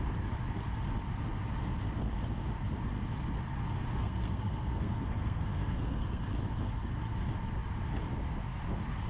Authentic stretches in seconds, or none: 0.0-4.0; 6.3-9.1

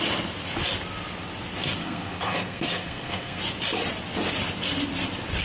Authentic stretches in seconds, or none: 0.0-1.8; 3.4-5.4

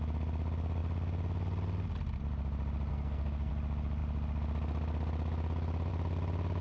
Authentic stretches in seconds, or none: 0.0-2.9; 3.5-6.6

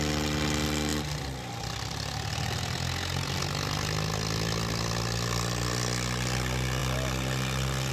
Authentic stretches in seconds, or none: 0.0-7.9

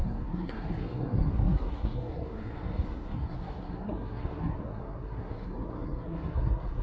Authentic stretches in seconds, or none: none

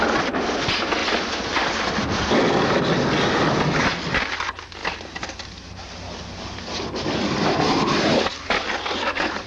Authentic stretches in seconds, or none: 0.0-9.5